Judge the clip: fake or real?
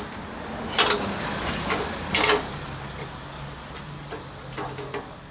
real